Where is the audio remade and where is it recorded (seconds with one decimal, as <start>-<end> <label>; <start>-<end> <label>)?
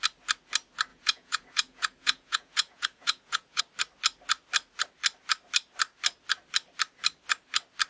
0.0-0.9 recorded; 0.9-3.6 remade; 3.6-7.9 recorded